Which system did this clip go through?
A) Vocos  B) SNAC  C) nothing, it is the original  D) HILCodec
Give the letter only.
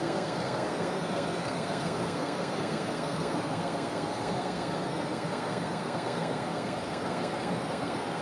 B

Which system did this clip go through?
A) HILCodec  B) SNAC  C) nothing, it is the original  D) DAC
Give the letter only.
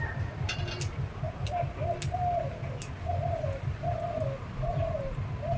C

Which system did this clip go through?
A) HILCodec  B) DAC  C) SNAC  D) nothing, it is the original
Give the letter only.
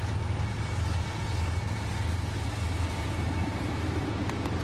D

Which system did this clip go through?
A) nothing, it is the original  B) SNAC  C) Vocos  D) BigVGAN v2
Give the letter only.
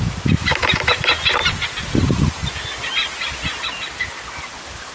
A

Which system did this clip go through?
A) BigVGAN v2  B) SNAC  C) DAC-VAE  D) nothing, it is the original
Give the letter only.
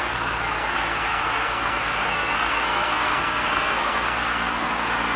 B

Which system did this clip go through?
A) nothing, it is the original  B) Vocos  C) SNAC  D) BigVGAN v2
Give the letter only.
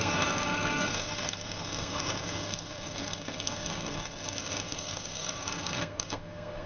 C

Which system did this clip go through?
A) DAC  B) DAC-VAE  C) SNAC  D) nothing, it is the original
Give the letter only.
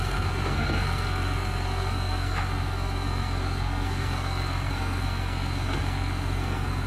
C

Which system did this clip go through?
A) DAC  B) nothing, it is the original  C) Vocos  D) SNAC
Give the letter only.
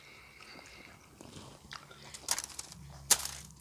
B